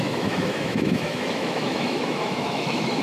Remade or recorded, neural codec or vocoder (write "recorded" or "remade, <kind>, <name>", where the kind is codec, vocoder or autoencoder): remade, autoencoder, DAC-VAE